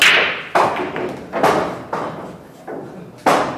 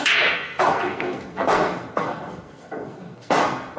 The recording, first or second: first